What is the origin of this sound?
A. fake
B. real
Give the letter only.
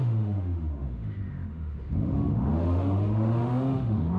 A